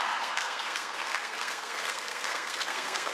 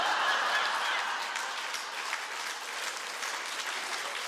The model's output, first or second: first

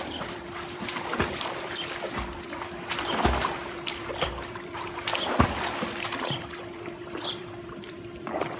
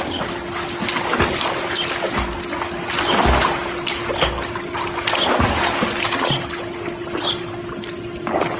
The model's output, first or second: first